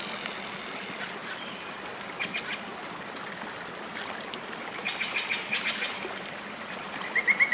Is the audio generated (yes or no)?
no